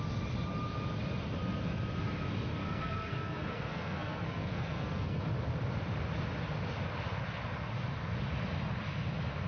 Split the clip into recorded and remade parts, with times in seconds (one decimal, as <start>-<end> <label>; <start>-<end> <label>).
0.0-2.6 recorded; 2.6-5.2 remade; 5.2-9.5 recorded